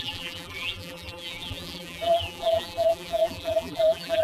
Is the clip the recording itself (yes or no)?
no